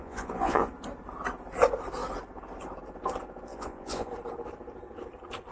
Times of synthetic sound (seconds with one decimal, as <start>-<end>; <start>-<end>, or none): 0.0-0.7; 3.5-4.1